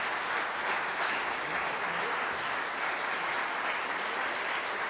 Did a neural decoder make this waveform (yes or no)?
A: no